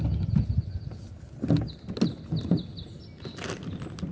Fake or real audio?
real